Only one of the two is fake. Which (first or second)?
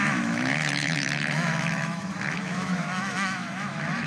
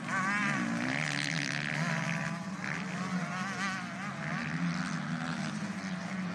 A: first